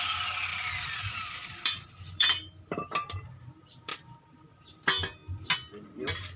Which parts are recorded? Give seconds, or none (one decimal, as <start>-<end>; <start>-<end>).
0.5-1.1; 3.9-4.5; 5.2-6.4